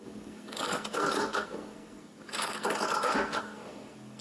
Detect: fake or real fake